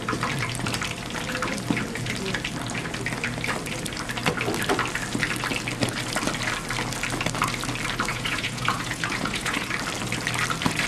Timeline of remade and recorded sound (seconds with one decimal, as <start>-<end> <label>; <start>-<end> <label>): 0.0-8.1 recorded; 8.1-9.7 remade; 9.7-10.9 recorded